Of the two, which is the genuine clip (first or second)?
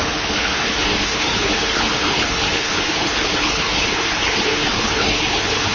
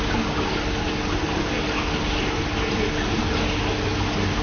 second